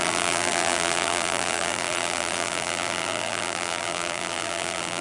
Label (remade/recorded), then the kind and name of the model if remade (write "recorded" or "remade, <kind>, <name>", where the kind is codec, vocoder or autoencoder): remade, vocoder, BigVGAN v2